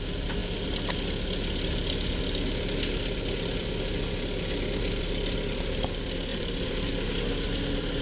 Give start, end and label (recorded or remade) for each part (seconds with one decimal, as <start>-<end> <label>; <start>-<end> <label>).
0.0-6.3 recorded; 6.3-6.9 remade; 6.9-8.0 recorded